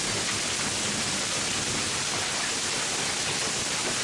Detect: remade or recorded recorded